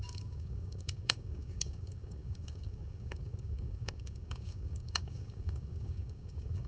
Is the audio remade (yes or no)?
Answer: yes